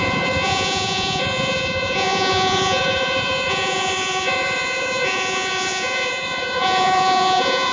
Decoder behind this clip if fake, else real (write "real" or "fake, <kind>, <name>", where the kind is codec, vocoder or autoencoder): fake, vocoder, Vocos